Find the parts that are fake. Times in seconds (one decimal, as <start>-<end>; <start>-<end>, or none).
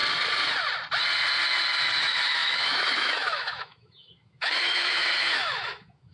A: 2.0-6.1